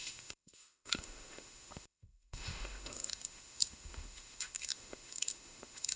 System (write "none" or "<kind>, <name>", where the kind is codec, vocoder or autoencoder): autoencoder, DAC-VAE